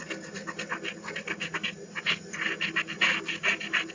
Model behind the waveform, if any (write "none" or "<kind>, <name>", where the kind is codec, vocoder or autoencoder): none